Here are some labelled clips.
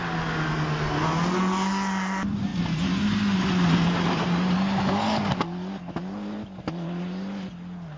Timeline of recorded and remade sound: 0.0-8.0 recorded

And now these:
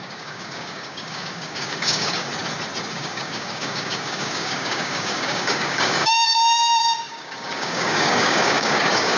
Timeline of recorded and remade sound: 0.0-2.3 remade; 2.3-2.9 recorded; 2.9-9.2 remade

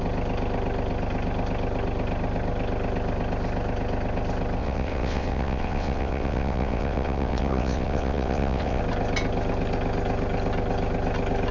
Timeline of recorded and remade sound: 0.0-4.6 recorded; 4.6-8.8 remade; 8.8-11.5 recorded

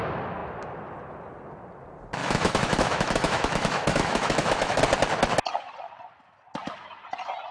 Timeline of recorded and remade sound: 0.0-2.2 recorded; 2.2-4.8 remade; 4.8-7.5 recorded

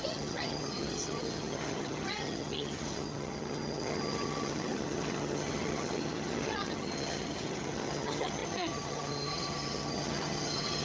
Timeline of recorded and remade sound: 0.0-10.8 remade